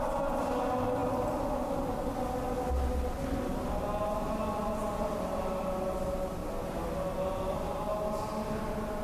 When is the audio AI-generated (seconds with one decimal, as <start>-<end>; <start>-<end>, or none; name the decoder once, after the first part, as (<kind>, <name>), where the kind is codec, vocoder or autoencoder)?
none